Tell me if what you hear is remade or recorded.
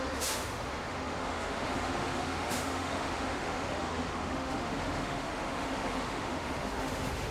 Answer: remade